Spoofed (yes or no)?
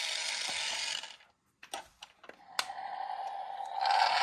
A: no